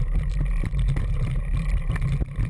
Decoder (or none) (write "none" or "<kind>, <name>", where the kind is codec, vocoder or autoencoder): vocoder, BigVGAN v2